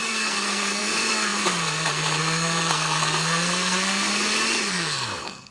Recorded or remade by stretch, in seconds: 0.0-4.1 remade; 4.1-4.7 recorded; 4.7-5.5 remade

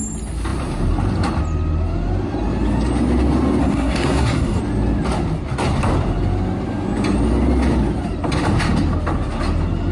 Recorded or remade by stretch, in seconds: 0.0-3.6 recorded; 3.6-4.6 remade; 4.6-9.9 recorded

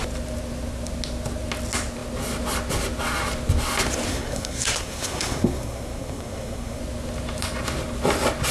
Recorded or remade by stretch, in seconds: 0.0-4.1 recorded; 4.1-6.8 remade; 6.8-8.5 recorded

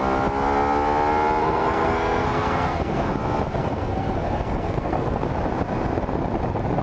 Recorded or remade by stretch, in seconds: 0.0-1.4 recorded; 1.4-3.1 remade; 3.1-3.6 recorded; 3.6-5.3 remade; 5.3-6.8 recorded

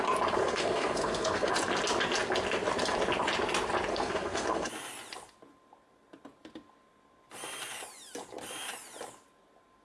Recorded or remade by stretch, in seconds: 0.0-0.4 recorded; 0.4-1.5 remade; 1.5-3.9 recorded; 3.9-4.7 remade; 4.7-9.8 recorded

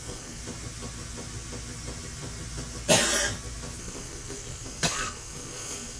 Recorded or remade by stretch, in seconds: 0.0-0.4 remade; 0.4-3.8 recorded; 3.8-6.0 remade

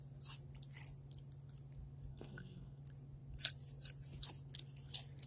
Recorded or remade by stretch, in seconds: 0.0-2.1 recorded; 2.1-2.8 remade; 2.8-5.3 recorded